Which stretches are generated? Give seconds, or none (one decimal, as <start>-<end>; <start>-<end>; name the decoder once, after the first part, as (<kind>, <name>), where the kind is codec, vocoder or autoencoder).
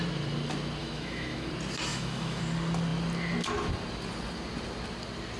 0.8-1.5 (autoencoder, DAC-VAE); 1.9-2.4